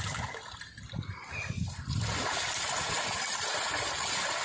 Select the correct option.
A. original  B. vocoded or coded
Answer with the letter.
A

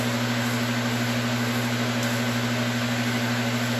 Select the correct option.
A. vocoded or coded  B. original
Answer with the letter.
B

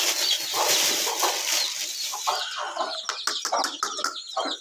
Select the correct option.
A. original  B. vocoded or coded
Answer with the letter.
A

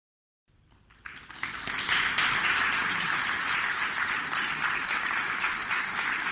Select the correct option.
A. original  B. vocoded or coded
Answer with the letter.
A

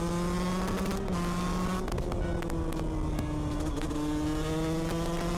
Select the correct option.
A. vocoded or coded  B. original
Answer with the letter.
B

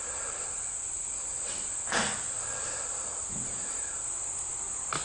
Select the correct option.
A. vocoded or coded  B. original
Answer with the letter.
B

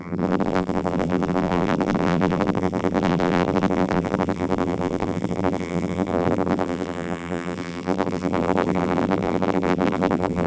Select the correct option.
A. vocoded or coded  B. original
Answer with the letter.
A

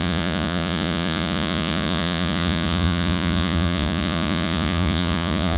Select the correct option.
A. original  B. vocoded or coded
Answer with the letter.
B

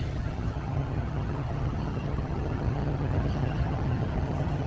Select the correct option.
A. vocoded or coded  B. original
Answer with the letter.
A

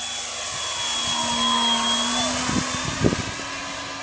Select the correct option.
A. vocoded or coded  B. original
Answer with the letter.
B